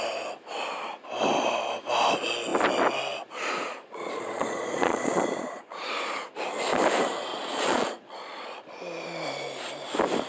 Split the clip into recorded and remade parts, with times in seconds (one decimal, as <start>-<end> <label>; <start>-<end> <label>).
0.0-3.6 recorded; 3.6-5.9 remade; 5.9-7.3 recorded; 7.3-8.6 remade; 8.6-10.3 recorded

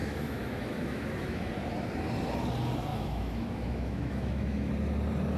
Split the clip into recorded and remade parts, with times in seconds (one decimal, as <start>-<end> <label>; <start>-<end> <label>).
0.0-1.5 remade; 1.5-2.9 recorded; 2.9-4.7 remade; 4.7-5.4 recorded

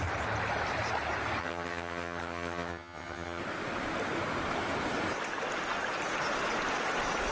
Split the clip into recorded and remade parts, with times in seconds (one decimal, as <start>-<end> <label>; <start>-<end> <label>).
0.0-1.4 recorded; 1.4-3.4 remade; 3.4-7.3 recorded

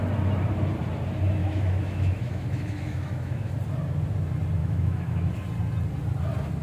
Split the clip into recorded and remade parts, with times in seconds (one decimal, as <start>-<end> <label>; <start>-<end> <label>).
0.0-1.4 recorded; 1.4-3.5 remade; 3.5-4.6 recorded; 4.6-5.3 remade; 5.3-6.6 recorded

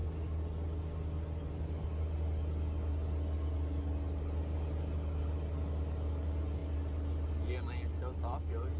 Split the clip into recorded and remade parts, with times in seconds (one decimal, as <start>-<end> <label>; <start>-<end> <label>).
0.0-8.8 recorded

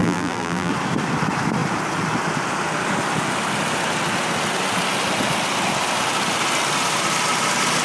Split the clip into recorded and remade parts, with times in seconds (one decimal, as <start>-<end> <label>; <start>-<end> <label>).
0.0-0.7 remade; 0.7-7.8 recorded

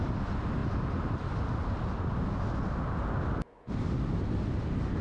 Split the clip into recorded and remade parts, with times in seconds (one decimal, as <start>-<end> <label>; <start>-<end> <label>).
0.0-5.0 recorded